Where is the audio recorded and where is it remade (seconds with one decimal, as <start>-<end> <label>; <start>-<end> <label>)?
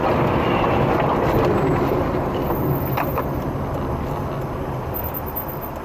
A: 0.0-5.8 recorded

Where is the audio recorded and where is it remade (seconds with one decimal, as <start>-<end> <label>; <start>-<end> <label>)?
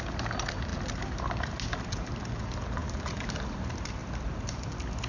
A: 0.0-5.1 recorded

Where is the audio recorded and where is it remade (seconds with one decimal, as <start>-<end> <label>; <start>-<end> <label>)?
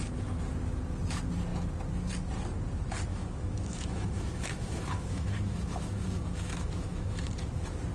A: 0.0-3.1 recorded; 3.1-7.3 remade; 7.3-7.9 recorded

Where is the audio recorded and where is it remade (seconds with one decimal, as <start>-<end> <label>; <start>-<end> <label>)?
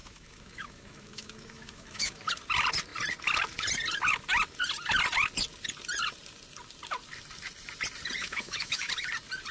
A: 0.0-2.3 remade; 2.3-8.2 recorded; 8.2-8.9 remade; 8.9-9.5 recorded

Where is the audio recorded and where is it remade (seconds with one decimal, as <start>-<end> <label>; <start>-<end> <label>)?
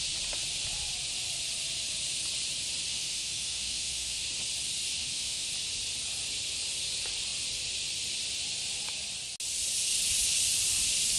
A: 0.0-2.9 recorded; 2.9-4.2 remade; 4.2-5.0 recorded; 5.0-5.5 remade; 5.5-11.2 recorded